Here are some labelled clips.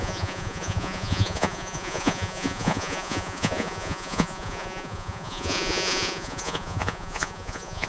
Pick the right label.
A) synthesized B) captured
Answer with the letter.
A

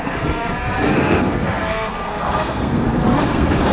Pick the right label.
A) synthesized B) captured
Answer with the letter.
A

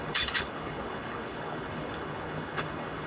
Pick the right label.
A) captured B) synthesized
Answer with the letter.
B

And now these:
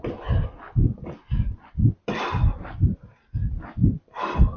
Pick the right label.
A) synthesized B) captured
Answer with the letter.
B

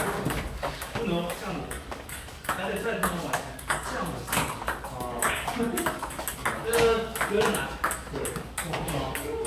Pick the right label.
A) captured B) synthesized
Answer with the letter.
B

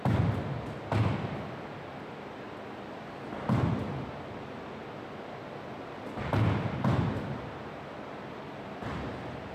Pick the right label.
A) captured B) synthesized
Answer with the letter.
A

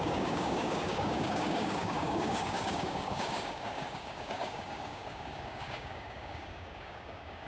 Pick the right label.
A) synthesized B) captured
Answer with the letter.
A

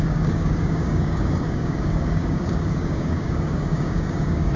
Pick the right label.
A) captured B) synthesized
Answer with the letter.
B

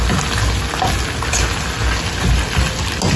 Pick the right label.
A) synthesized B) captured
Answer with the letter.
B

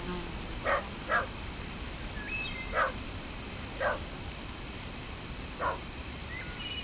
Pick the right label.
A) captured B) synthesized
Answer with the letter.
A